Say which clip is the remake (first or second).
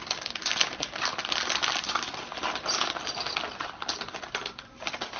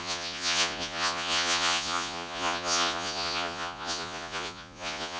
second